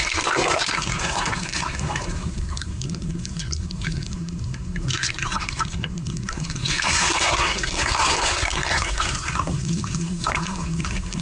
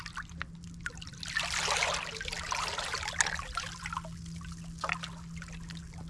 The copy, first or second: first